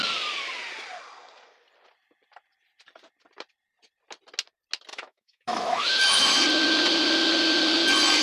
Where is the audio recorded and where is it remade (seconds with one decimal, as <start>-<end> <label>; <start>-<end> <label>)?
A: 0.0-4.9 recorded; 4.9-6.4 remade; 6.4-8.2 recorded